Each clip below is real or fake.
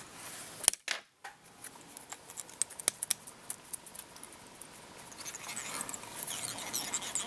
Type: real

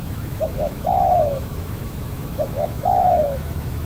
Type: fake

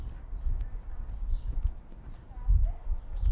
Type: real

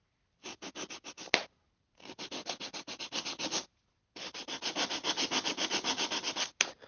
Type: real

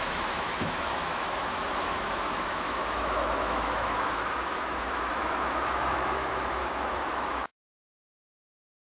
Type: fake